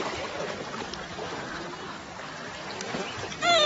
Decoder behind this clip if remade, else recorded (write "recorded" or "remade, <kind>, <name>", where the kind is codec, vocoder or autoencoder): recorded